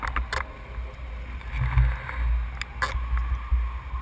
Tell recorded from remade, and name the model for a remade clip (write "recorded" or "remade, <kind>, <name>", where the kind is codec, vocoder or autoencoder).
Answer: recorded